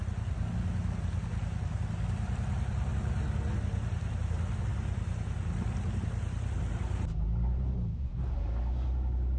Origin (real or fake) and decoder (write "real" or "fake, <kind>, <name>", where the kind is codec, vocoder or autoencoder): real